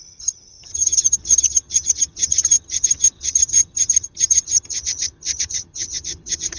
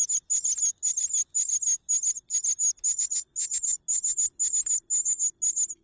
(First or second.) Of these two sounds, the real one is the second